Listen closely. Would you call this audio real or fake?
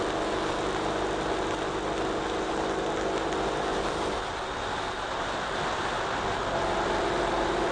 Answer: real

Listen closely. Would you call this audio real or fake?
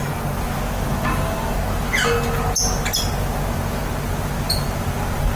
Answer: real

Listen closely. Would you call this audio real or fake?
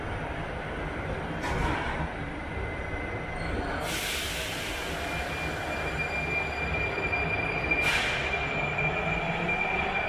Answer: real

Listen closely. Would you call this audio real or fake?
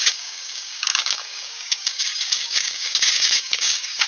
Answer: fake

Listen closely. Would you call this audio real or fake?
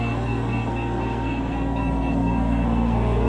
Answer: fake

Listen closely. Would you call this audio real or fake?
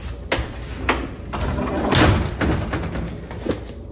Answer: real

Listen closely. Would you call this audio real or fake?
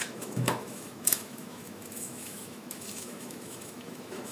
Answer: fake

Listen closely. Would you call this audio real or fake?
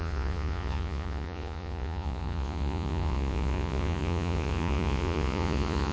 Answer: fake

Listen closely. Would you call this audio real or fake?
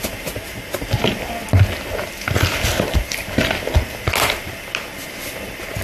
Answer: real